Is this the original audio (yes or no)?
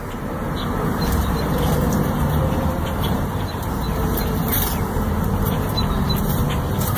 no